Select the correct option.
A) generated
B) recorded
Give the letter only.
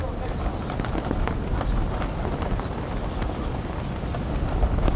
B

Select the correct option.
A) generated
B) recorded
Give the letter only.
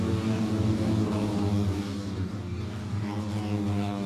A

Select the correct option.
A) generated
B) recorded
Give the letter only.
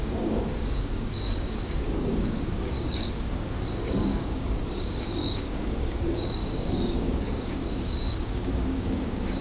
A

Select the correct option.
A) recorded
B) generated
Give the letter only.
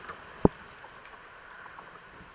A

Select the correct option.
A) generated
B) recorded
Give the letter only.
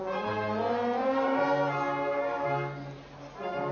B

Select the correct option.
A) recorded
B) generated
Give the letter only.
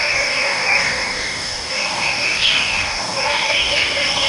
B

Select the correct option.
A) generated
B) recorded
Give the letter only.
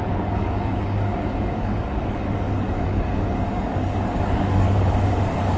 A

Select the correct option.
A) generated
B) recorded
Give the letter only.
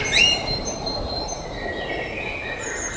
B